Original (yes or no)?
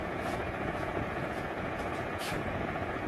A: no